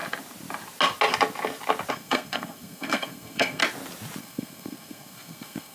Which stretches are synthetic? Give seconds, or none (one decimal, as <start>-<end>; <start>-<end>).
1.9-3.6; 4.2-5.7